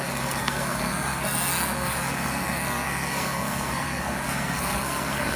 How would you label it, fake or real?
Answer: fake